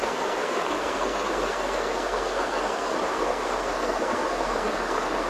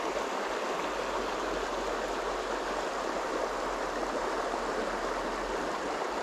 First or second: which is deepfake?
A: first